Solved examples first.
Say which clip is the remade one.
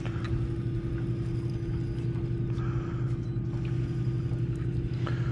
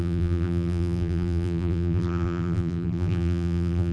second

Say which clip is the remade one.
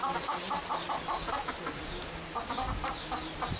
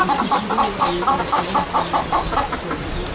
second